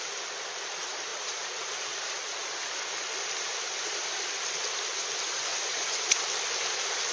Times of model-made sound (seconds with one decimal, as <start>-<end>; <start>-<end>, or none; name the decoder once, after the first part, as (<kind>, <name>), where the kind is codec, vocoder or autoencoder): 1.1-1.7 (vocoder, Vocos); 5.5-6.1